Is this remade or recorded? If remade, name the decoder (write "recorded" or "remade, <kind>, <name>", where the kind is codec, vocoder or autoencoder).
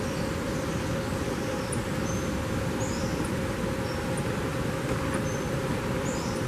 recorded